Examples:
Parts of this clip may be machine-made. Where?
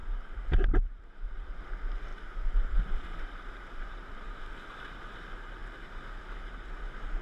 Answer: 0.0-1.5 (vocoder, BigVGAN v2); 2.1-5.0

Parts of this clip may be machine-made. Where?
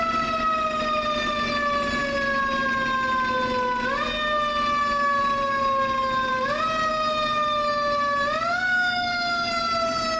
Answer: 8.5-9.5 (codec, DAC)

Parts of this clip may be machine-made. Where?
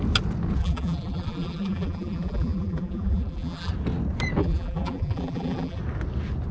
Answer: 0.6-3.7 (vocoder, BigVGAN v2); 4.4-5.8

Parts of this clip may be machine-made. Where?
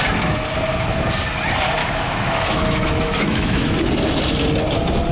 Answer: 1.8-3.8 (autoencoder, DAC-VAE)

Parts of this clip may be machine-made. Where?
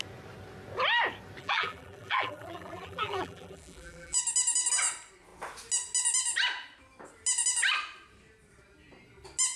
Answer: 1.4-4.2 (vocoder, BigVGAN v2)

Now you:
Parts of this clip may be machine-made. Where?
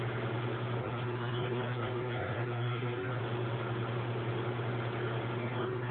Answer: 0.8-3.2 (codec, SNAC); 5.4-5.9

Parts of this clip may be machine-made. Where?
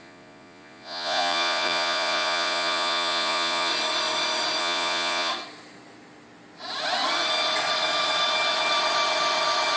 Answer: 0.0-3.7 (vocoder, Vocos); 4.6-5.3